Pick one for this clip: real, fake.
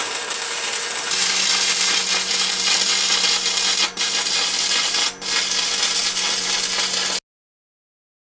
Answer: real